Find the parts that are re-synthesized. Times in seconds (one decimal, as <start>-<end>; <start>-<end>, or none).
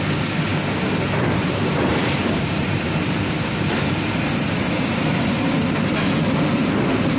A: 1.9-5.2